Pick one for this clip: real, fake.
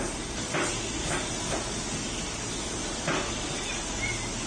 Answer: real